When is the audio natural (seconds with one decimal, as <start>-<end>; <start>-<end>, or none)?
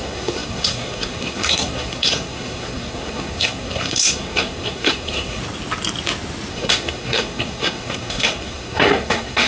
5.4-6.5